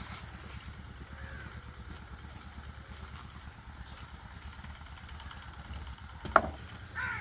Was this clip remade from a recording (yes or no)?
no